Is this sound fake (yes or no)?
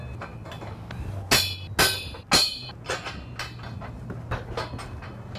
no